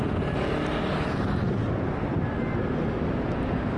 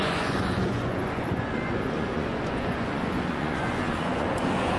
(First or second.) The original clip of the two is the first